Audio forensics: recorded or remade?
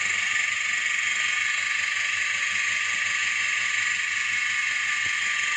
recorded